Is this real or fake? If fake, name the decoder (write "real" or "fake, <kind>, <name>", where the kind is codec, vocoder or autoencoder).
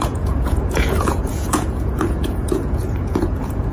fake, vocoder, Vocos